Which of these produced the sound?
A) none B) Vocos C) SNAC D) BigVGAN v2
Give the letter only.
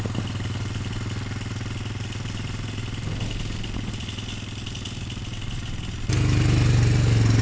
A